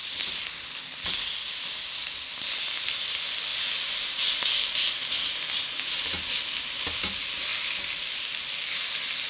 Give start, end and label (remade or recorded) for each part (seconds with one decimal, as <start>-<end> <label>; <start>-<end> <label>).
0.0-0.6 remade; 0.6-9.3 recorded